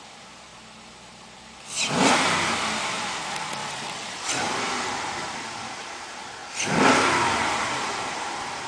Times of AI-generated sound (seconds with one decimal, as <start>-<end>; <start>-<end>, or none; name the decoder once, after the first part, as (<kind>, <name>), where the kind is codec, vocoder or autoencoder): 0.0-0.5 (vocoder, BigVGAN v2); 2.9-6.4; 7.2-8.7